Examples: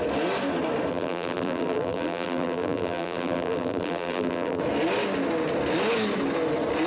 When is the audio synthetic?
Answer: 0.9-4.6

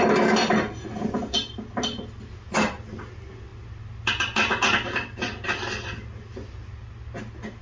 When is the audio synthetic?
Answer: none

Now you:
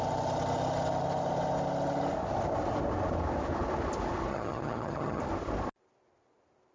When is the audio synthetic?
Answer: 4.3-5.2

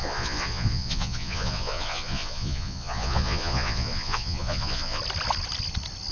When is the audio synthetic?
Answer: 0.0-5.0

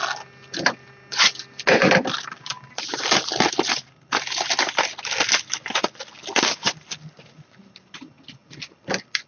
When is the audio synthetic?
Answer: 8.4-9.3

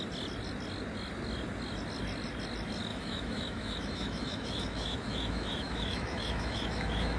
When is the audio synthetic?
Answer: 2.9-7.2